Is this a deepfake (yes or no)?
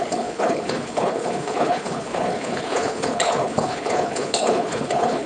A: yes